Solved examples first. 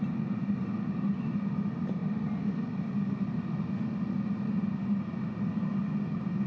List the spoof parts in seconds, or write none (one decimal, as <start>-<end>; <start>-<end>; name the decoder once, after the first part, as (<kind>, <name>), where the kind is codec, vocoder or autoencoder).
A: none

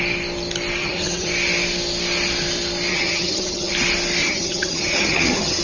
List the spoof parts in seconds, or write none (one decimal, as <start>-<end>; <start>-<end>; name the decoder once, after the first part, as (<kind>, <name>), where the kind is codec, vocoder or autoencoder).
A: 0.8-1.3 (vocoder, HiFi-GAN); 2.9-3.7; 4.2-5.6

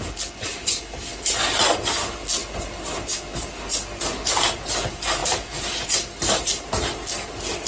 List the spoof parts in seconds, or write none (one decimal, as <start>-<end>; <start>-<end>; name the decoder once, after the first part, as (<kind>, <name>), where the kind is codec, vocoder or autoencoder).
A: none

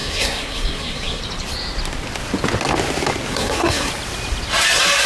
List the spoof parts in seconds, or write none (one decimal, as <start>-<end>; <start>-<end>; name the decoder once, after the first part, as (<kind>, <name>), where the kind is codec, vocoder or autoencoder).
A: 0.0-1.2 (codec, SNAC); 3.3-3.9

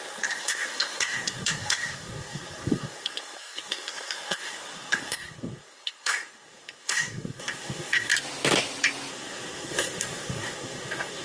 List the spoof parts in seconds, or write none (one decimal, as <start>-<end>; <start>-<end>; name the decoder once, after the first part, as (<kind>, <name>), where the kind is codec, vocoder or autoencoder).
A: 0.0-8.1 (codec, SNAC); 9.1-11.2